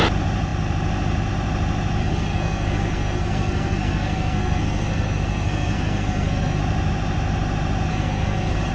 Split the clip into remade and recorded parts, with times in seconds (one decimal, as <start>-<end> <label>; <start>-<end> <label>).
0.0-2.0 recorded; 2.0-6.6 remade; 6.6-7.9 recorded; 7.9-8.7 remade